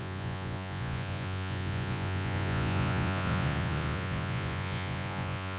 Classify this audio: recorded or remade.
remade